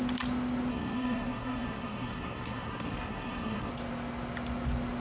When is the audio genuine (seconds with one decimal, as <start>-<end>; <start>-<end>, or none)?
0.0-0.7; 3.7-5.0